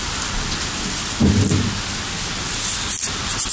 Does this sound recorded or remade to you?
recorded